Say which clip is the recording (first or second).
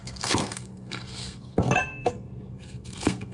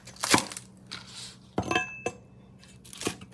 second